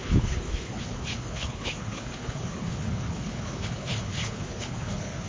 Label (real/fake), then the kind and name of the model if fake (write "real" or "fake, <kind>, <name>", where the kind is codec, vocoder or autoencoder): fake, codec, HILCodec